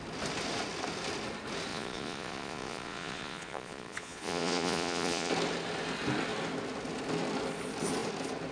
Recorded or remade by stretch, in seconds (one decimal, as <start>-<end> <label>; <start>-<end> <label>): 0.0-1.7 recorded; 1.7-5.3 remade; 5.3-8.5 recorded